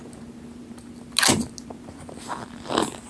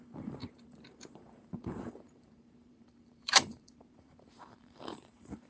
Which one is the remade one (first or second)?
second